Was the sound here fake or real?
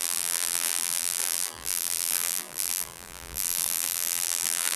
fake